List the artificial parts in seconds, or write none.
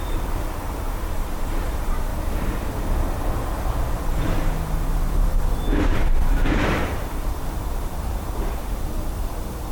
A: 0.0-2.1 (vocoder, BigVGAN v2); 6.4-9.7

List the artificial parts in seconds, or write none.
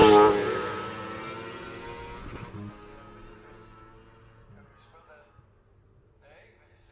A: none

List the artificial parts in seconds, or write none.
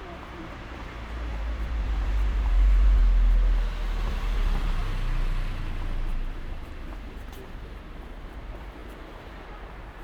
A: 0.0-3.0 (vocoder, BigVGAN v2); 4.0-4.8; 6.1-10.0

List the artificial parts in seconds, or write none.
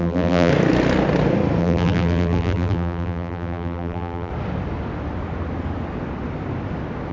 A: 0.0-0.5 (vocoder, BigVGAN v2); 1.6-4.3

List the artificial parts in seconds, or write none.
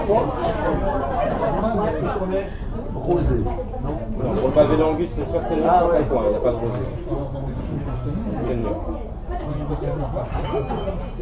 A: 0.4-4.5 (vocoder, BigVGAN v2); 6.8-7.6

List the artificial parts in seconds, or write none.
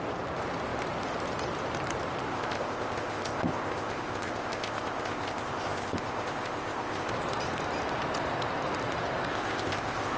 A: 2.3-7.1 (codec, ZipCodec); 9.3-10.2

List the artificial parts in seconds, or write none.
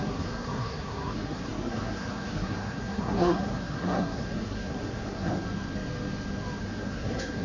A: 0.0-5.3 (codec, SNAC); 6.6-7.4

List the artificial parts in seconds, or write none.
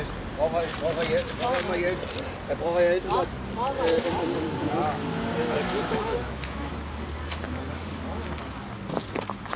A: 5.7-6.7 (autoencoder, DAC-VAE)